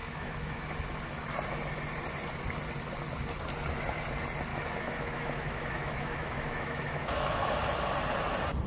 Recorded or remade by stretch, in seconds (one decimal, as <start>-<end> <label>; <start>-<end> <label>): 0.0-0.6 remade; 0.6-4.5 recorded; 4.5-7.5 remade; 7.5-8.7 recorded